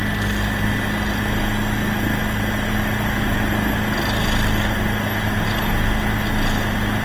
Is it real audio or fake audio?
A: real